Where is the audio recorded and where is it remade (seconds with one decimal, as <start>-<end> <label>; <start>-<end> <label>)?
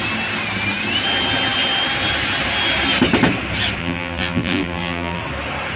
0.0-3.8 recorded; 3.8-5.2 remade; 5.2-5.8 recorded